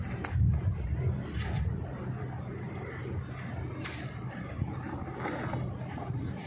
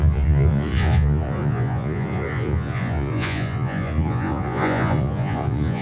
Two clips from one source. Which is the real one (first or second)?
first